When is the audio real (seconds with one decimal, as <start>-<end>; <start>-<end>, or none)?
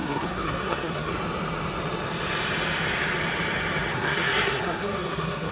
1.1-3.9